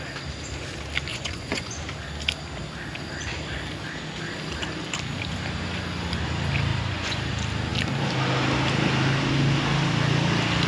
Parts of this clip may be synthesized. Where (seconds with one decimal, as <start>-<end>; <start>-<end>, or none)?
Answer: 1.1-1.8; 6.7-7.2